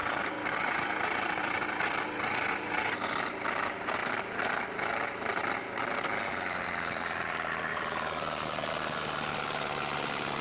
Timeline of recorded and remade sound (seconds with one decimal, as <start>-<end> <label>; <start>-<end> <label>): 0.0-1.8 remade; 1.8-7.7 recorded; 7.7-8.7 remade; 8.7-10.4 recorded